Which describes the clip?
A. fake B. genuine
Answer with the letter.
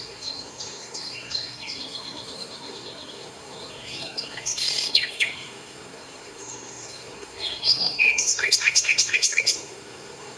A